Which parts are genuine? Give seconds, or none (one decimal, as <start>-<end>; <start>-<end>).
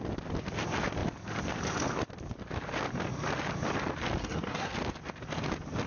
0.0-4.2; 4.7-5.9